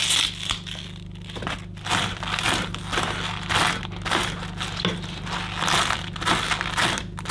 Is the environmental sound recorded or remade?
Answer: recorded